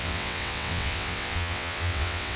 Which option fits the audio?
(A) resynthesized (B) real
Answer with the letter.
A